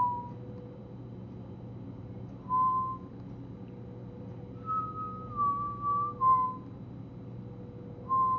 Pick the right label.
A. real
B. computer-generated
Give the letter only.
A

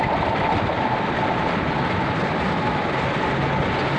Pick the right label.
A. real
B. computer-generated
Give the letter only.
A